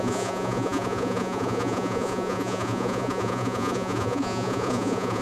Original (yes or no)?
no